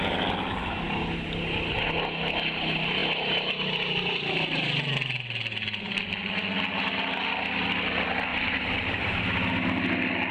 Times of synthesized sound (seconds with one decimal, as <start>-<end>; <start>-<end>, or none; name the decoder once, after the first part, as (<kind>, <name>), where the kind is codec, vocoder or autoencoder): 8.3-9.2 (vocoder, BigVGAN v2)